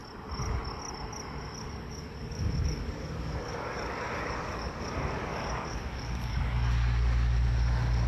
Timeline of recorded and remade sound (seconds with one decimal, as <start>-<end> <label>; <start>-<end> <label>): 0.0-1.6 recorded; 1.6-8.1 remade